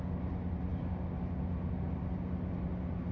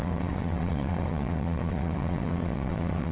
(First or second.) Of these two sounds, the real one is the first